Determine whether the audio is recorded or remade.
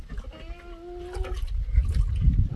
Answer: recorded